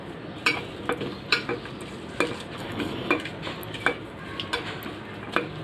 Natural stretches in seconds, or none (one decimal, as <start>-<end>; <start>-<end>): 0.0-2.6; 3.1-5.6